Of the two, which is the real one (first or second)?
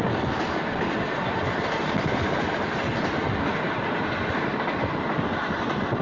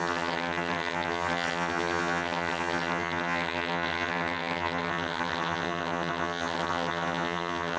first